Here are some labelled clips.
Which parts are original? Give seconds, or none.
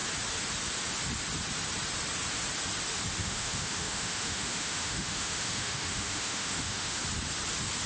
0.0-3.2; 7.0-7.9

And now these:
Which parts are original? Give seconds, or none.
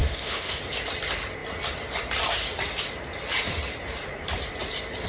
0.6-5.1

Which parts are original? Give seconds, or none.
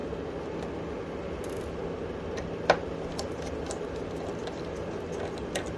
0.0-5.8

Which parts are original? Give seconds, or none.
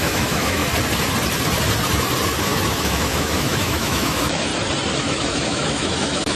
0.6-2.4; 4.5-5.0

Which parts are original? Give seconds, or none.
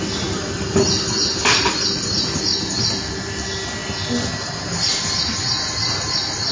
0.0-6.5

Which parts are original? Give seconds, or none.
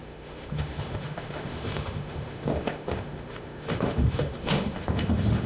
none